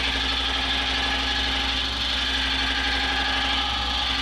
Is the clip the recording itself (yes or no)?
yes